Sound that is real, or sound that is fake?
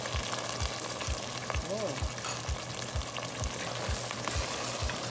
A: real